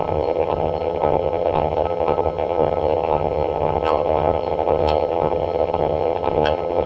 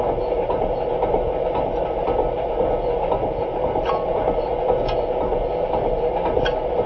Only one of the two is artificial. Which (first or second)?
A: first